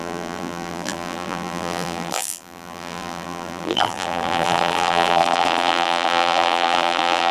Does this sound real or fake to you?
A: fake